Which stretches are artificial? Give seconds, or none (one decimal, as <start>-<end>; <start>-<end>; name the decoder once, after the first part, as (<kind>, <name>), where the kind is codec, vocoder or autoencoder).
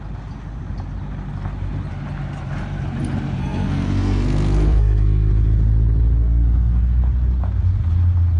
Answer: 3.4-5.3 (codec, SNAC); 6.2-7.0